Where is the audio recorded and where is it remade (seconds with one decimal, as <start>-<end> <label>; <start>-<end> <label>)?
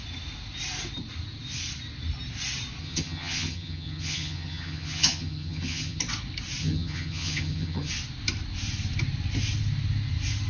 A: 0.0-2.8 recorded; 2.8-6.0 remade; 6.0-6.6 recorded; 6.6-7.9 remade; 7.9-10.5 recorded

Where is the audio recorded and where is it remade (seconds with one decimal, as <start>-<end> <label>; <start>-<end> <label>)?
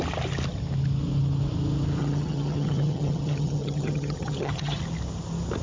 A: 0.0-2.0 recorded; 2.0-4.8 remade; 4.8-5.6 recorded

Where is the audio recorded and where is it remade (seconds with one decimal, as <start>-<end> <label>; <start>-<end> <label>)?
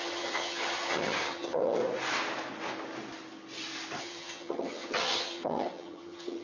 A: 0.0-1.8 remade; 1.8-4.0 recorded; 4.0-6.4 remade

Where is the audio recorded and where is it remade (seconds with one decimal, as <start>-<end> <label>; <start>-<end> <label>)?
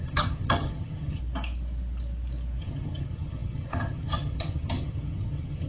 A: 0.0-1.2 remade; 1.2-2.6 recorded; 2.6-5.7 remade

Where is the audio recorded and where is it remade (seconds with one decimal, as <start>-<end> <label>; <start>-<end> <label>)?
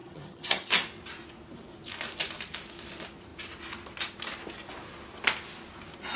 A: 0.0-0.7 remade; 0.7-6.2 recorded